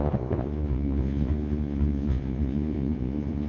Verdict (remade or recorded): remade